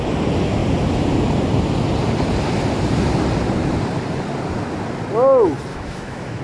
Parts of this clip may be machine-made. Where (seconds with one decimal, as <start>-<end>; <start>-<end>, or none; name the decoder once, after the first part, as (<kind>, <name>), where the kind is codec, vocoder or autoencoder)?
5.7-6.4 (autoencoder, DAC-VAE)